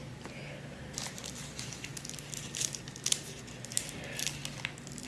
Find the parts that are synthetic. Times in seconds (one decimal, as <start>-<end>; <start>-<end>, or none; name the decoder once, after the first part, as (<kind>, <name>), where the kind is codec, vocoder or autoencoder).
none